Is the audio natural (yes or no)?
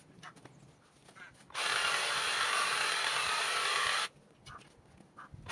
yes